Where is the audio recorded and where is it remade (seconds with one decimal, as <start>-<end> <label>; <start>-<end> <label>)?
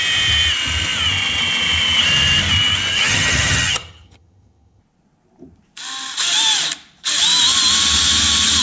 0.0-2.9 recorded; 2.9-4.8 remade; 4.8-8.6 recorded